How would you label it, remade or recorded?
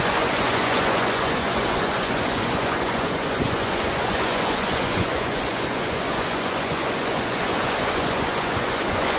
remade